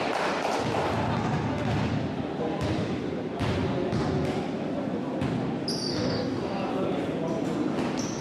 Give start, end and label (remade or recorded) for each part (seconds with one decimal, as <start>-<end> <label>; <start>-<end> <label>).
0.0-5.9 recorded; 5.9-6.7 remade; 6.7-8.2 recorded